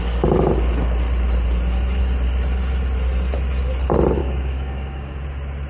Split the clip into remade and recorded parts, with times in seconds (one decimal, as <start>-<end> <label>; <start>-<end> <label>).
0.0-4.2 recorded; 4.2-5.2 remade; 5.2-5.7 recorded